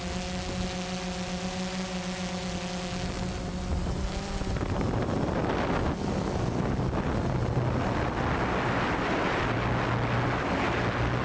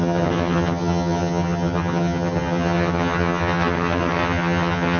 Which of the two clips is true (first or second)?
first